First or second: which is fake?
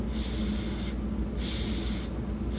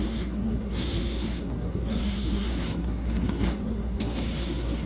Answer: second